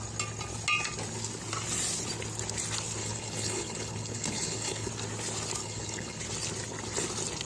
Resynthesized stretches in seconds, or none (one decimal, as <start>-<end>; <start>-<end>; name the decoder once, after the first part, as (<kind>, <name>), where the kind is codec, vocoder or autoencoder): 3.0-4.9 (codec, HILCodec); 5.6-6.2

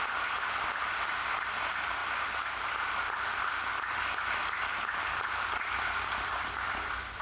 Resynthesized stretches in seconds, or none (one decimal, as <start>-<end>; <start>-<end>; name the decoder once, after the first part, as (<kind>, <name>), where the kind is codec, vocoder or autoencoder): none

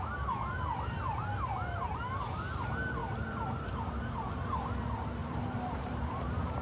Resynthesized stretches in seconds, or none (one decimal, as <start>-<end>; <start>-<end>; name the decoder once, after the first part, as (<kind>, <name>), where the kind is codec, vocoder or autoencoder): 3.0-4.3 (vocoder, BigVGAN v2); 5.2-6.6

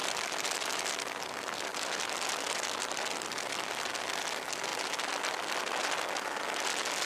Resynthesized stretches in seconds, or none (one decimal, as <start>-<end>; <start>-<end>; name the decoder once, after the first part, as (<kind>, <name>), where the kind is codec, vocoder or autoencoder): none

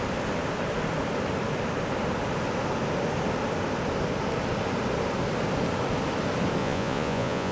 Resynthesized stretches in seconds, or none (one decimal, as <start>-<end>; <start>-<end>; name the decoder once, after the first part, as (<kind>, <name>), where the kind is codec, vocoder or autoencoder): 6.6-7.5 (vocoder, Vocos)

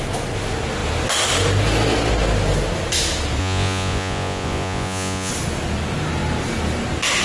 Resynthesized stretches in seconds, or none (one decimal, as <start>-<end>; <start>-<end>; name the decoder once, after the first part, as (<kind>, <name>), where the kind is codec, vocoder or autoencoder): 3.4-5.3 (vocoder, Vocos)

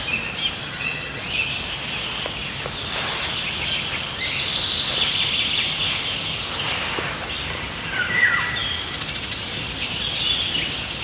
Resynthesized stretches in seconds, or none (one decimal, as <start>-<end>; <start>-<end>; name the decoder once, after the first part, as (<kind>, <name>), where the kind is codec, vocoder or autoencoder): 0.6-1.2 (vocoder, HiFi-GAN)

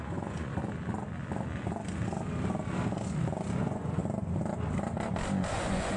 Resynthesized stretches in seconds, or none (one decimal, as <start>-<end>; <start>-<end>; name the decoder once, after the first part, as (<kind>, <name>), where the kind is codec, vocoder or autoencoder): 0.0-0.6 (vocoder, Vocos); 3.6-4.0; 5.5-6.0